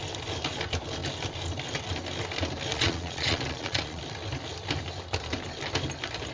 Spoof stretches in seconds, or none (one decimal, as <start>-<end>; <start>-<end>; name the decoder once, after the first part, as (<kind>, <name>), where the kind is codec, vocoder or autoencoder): 2.7-4.0 (vocoder, Vocos)